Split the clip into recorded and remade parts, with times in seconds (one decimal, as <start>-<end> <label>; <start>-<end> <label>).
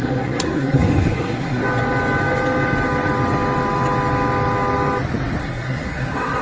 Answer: 0.0-1.6 remade; 1.6-5.4 recorded; 5.4-6.4 remade